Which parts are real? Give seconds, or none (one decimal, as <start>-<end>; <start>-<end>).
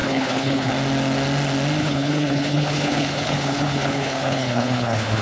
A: 0.7-1.8